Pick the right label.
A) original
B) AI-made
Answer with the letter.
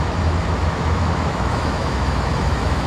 B